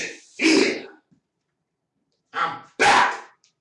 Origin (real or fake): fake